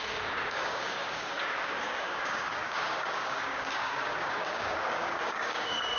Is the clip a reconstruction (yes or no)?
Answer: yes